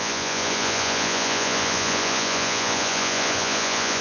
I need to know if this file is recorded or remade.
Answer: remade